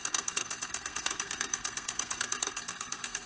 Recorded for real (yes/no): no